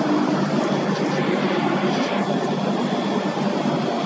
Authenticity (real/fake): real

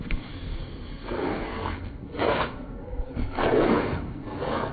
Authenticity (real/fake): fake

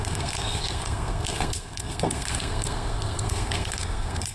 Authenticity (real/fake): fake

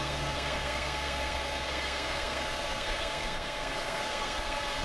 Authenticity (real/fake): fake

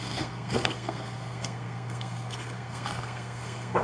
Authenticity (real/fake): fake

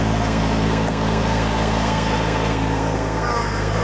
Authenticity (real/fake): fake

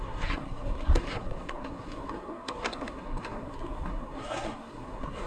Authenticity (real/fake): fake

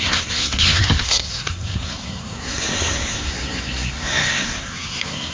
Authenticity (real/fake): fake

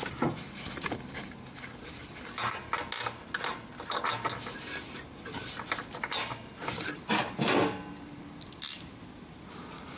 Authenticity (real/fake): real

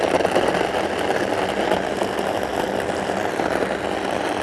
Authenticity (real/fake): real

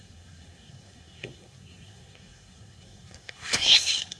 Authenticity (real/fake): fake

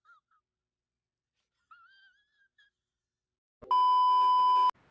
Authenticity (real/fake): real